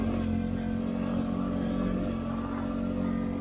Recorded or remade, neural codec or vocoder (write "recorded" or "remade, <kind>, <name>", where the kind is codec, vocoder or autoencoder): recorded